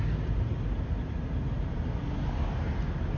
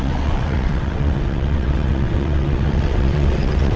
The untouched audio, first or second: first